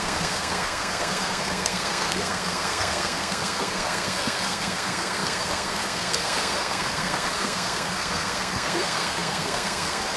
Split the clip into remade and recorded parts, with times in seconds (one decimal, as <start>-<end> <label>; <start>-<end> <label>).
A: 0.0-10.2 remade